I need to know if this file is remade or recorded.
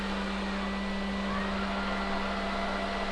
recorded